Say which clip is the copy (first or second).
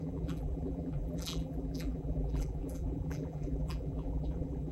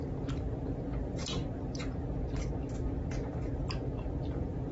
first